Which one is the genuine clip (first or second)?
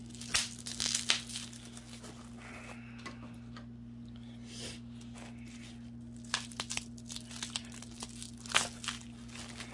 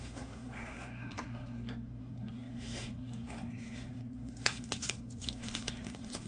first